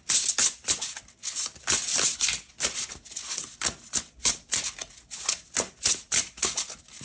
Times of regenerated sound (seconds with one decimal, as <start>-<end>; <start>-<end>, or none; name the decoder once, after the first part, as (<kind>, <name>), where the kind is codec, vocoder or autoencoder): none